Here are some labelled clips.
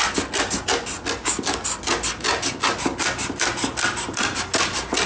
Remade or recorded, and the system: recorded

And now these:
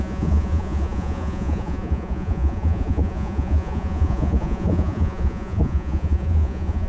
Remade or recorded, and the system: remade, vocoder, Vocos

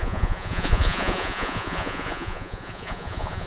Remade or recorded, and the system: remade, vocoder, Vocos